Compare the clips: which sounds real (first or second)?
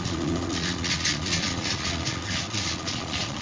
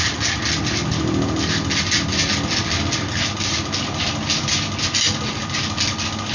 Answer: second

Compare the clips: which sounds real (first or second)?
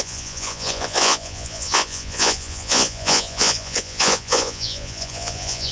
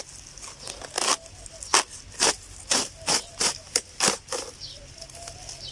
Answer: second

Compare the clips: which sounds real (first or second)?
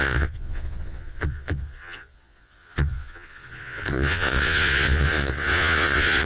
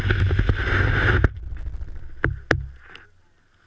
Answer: second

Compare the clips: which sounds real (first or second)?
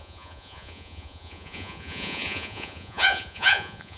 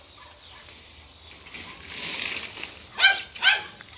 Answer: second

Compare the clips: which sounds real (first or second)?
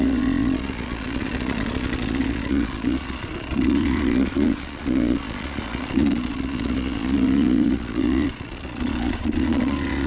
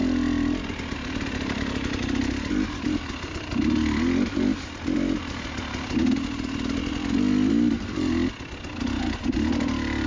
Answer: second